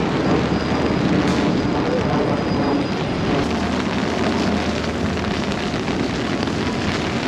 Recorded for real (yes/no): yes